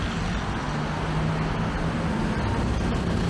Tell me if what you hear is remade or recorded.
recorded